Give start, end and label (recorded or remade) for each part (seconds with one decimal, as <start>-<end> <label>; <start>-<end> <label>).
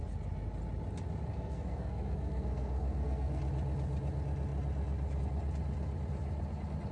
0.0-1.3 recorded; 1.3-3.4 remade; 3.4-6.9 recorded